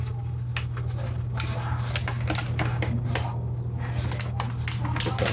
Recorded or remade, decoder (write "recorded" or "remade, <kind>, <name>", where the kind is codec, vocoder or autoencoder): recorded